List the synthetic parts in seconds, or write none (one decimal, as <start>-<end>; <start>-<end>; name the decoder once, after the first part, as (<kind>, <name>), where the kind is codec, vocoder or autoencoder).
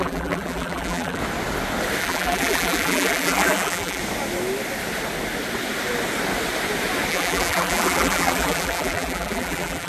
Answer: 0.0-1.2 (vocoder, BigVGAN v2); 2.0-4.0; 7.1-9.9